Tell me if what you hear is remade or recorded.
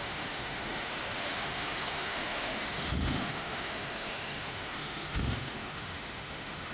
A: remade